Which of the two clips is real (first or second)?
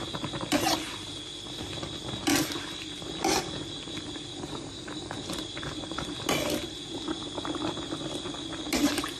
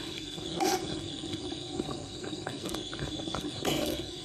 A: first